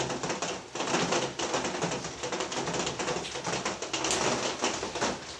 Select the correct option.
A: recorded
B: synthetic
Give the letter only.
A